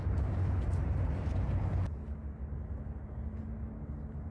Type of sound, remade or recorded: recorded